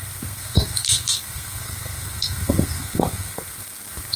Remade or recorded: remade